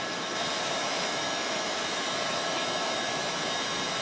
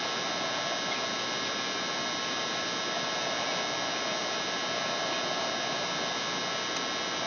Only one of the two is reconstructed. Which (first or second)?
first